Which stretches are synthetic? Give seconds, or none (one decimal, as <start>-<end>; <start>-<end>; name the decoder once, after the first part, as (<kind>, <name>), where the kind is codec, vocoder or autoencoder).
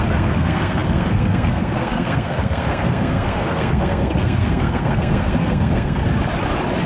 0.0-6.0 (codec, SNAC)